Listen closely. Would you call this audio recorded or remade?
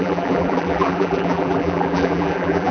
remade